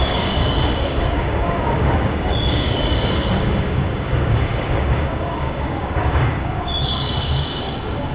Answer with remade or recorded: remade